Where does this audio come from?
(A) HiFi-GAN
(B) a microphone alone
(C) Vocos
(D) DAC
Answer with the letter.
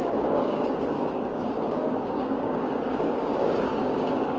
D